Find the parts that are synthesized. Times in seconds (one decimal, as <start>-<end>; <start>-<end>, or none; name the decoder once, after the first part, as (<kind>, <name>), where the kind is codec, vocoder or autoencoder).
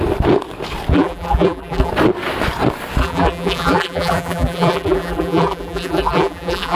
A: 0.9-1.9 (vocoder, BigVGAN v2); 3.0-6.8